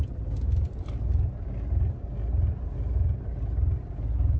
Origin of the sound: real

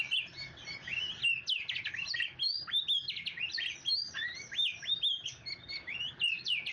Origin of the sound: real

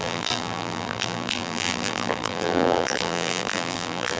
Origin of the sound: fake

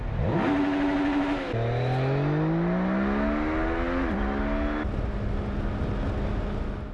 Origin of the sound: real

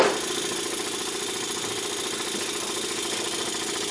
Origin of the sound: real